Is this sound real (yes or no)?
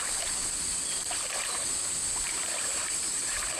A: no